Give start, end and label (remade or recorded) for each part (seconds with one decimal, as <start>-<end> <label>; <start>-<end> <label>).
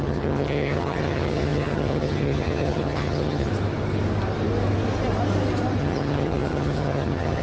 0.0-3.5 remade; 3.5-5.8 recorded; 5.8-7.4 remade